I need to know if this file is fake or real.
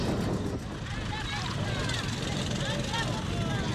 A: real